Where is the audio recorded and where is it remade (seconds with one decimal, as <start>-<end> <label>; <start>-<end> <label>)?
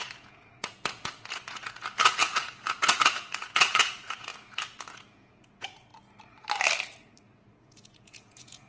0.0-5.9 remade; 5.9-7.6 recorded; 7.6-8.7 remade